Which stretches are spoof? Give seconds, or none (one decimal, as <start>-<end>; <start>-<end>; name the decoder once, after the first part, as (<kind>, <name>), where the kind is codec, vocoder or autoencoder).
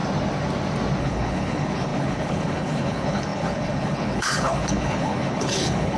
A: 1.0-6.0 (codec, HILCodec)